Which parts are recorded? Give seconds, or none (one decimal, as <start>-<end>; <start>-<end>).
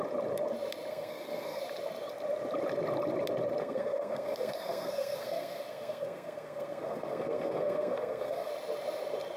0.0-0.9; 1.6-3.6; 8.5-9.4